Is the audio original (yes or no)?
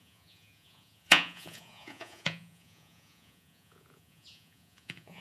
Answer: no